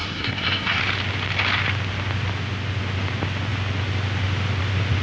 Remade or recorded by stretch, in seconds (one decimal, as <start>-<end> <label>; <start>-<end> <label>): 0.0-0.8 remade; 0.8-5.0 recorded